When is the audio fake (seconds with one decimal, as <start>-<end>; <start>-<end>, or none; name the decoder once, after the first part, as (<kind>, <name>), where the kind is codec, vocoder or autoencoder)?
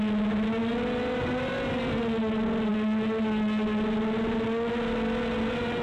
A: none